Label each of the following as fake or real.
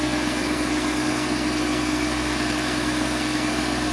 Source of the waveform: fake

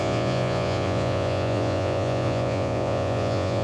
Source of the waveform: fake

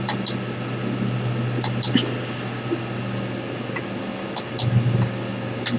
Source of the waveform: real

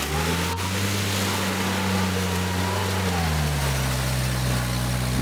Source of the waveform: real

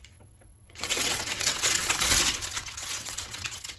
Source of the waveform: fake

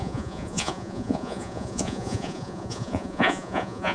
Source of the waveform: fake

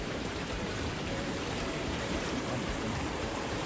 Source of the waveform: fake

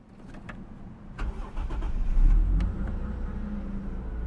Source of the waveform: real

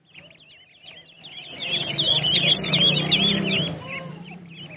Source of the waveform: real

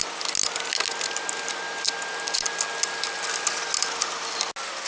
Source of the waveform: real